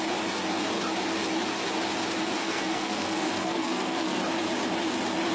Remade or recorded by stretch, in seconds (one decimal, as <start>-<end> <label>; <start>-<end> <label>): 0.0-2.4 recorded; 2.4-4.2 remade; 4.2-5.3 recorded